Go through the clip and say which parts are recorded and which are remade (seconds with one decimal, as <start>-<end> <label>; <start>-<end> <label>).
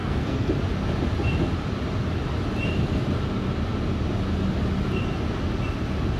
0.0-0.5 remade; 0.5-6.2 recorded